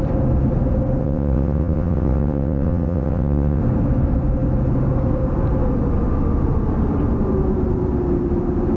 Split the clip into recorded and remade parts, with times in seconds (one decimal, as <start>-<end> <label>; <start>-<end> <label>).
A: 0.0-1.0 recorded; 1.0-3.6 remade; 3.6-8.8 recorded